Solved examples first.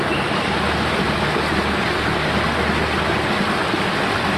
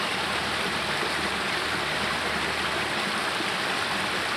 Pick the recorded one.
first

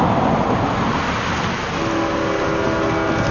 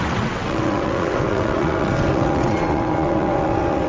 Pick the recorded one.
first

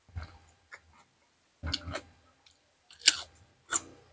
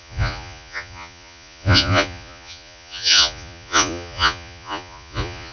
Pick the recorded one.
first